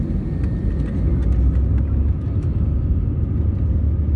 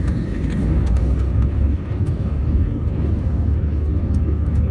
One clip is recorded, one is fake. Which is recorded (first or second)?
first